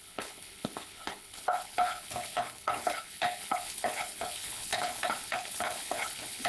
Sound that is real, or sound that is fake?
fake